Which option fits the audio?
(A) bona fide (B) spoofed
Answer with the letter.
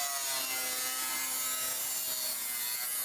A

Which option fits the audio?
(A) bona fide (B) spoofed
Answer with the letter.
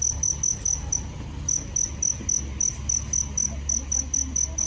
A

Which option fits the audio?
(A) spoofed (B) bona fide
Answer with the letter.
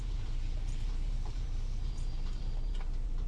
A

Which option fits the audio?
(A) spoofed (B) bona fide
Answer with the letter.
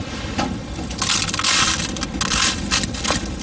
B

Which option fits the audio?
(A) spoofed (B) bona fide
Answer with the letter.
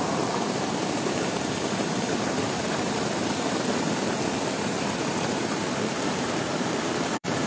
A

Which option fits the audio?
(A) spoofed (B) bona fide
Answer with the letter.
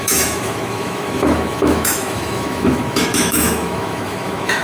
A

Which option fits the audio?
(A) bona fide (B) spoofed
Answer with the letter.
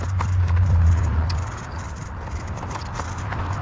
A